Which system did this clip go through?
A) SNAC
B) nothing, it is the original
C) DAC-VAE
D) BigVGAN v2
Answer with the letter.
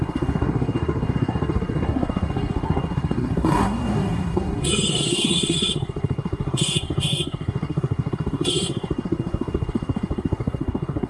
A